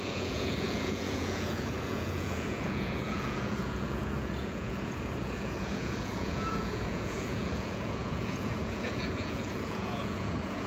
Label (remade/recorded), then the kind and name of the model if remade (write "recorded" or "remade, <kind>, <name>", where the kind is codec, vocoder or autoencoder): remade, vocoder, Vocos